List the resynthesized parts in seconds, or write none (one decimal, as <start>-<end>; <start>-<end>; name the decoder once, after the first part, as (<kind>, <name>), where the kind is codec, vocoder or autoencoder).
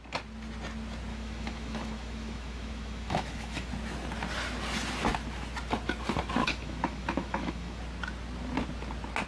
1.1-3.7 (autoencoder, DAC-VAE); 6.4-7.8